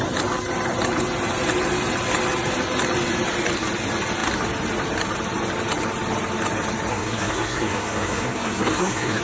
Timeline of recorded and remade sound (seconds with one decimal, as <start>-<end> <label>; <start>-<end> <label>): 0.0-6.9 recorded; 6.9-9.2 remade